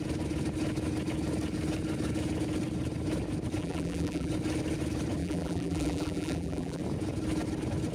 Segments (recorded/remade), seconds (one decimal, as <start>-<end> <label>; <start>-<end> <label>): 0.0-3.6 recorded; 3.6-4.3 remade; 4.3-5.2 recorded; 5.2-6.8 remade; 6.8-7.9 recorded